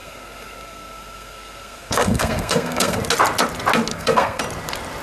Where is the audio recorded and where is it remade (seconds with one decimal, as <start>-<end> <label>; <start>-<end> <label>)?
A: 0.0-3.0 remade; 3.0-3.9 recorded; 3.9-4.4 remade; 4.4-5.0 recorded